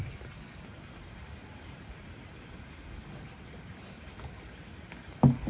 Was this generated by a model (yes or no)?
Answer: no